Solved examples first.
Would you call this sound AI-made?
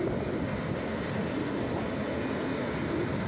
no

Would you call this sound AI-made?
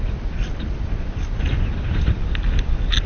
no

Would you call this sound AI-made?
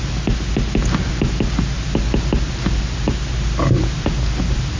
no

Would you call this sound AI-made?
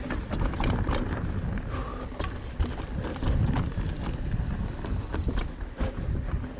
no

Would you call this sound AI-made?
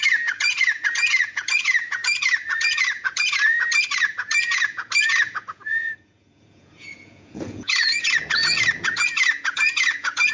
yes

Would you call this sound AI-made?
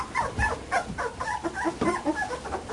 no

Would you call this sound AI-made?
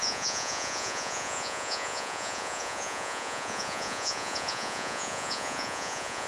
yes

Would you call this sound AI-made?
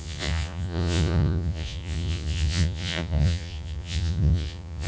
yes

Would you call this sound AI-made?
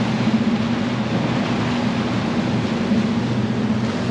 no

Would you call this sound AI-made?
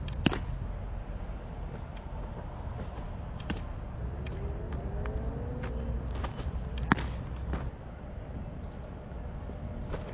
no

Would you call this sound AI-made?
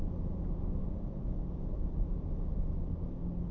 no